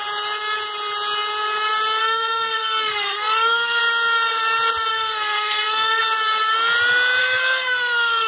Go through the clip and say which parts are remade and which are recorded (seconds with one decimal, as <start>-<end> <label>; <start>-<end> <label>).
0.0-2.0 recorded; 2.0-3.8 remade; 3.8-4.9 recorded; 4.9-6.0 remade; 6.0-7.2 recorded; 7.2-8.3 remade